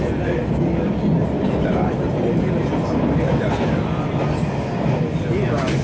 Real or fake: real